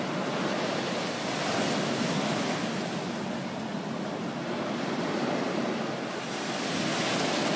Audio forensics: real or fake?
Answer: real